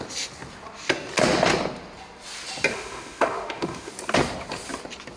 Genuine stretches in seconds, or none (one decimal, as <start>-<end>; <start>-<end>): 0.0-2.7; 3.9-5.2